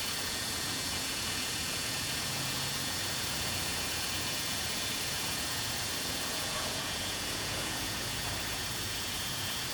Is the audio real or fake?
fake